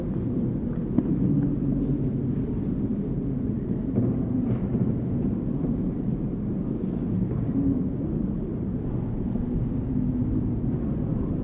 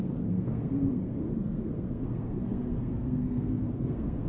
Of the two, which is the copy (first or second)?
second